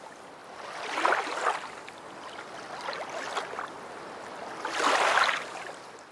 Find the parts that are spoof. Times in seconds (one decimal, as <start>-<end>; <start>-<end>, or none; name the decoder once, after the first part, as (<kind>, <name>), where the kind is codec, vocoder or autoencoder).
none